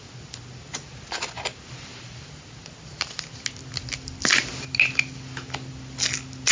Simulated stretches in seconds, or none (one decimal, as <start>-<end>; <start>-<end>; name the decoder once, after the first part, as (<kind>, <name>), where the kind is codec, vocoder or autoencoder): none